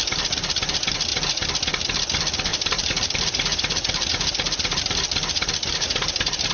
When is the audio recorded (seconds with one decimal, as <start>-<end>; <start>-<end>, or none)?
0.0-2.5